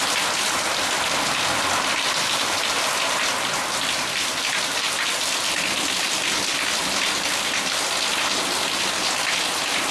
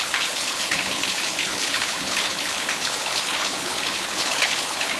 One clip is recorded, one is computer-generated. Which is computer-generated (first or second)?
second